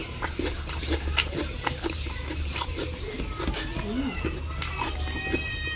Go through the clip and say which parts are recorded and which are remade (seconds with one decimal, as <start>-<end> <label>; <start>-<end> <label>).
0.0-3.1 remade; 3.1-5.8 recorded